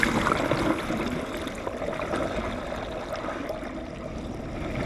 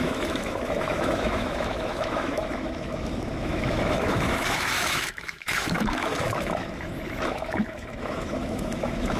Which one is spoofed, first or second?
second